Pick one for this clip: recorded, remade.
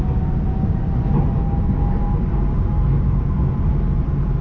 recorded